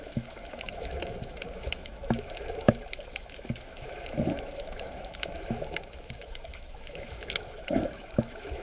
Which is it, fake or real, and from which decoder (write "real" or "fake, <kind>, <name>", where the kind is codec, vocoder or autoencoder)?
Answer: fake, autoencoder, DAC-VAE